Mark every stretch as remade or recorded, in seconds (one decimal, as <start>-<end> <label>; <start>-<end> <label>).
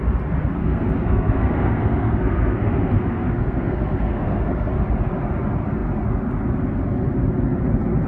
0.0-0.6 recorded; 0.6-4.7 remade; 4.7-8.1 recorded